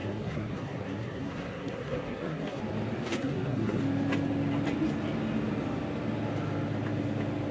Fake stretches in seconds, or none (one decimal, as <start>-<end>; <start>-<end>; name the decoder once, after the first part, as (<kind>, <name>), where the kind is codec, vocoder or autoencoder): 0.0-2.6 (codec, SNAC); 3.1-3.8